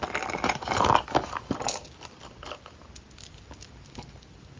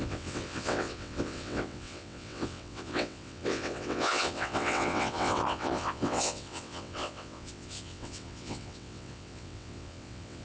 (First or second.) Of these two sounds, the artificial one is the second